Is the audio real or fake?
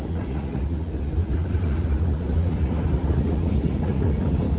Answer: fake